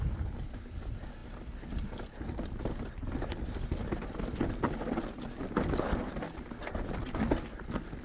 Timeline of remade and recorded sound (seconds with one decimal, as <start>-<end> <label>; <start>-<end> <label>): 0.0-8.0 recorded

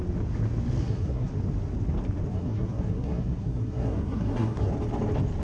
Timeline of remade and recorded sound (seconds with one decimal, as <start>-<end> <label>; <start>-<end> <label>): 0.0-0.8 recorded; 0.8-1.3 remade; 1.3-2.3 recorded; 2.3-4.7 remade; 4.7-5.4 recorded

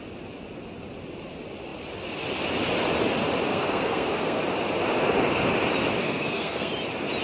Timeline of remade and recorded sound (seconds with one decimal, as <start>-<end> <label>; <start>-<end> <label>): 0.0-3.5 recorded; 3.5-4.4 remade; 4.4-6.0 recorded; 6.0-6.7 remade; 6.7-7.2 recorded

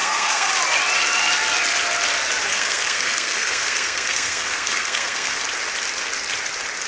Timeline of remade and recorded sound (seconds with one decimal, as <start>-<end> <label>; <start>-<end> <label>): 0.0-0.5 remade; 0.5-2.5 recorded; 2.5-5.4 remade; 5.4-6.9 recorded

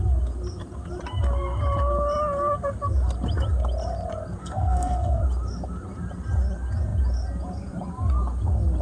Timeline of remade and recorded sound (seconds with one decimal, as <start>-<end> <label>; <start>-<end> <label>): 0.0-4.4 recorded; 4.4-5.2 remade; 5.2-8.8 recorded

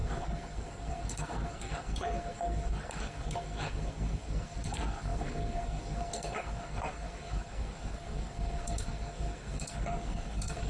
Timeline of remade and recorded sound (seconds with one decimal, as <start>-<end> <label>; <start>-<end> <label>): 0.0-10.7 remade

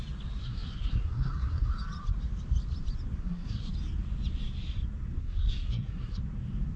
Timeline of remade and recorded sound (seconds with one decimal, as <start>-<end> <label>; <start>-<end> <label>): 0.0-0.4 recorded; 0.4-1.7 remade; 1.7-3.2 recorded; 3.2-3.7 remade; 3.7-5.2 recorded; 5.2-6.2 remade; 6.2-6.8 recorded